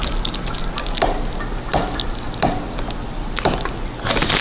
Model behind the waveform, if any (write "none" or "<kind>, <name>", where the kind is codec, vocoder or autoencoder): none